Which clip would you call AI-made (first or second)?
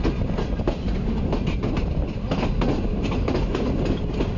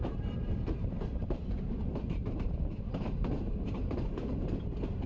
second